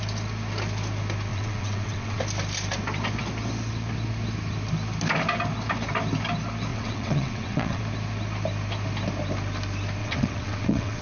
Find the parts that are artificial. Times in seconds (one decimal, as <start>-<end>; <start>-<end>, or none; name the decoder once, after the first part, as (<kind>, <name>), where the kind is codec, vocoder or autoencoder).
1.3-2.2 (vocoder, WaveNeXt); 6.7-7.8; 10.0-11.0